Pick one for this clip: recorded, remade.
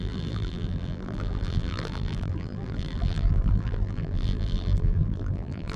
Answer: remade